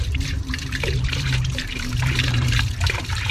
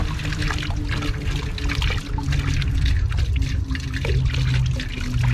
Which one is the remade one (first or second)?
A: first